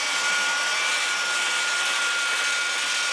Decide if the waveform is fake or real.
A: real